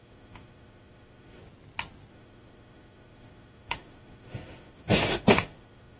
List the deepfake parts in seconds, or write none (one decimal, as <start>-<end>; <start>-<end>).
0.0-1.4; 2.1-6.0